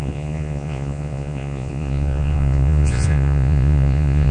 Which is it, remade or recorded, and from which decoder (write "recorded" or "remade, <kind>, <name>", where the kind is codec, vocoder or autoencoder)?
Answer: remade, vocoder, Vocos